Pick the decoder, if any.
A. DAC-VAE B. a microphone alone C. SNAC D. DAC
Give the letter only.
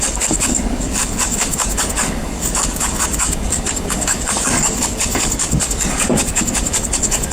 D